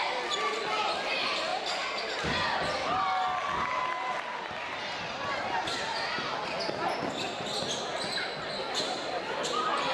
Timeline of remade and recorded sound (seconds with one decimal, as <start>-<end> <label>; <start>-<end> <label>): 0.0-9.9 recorded